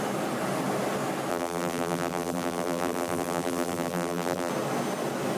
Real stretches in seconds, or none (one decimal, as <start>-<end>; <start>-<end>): 0.0-1.3; 4.5-5.4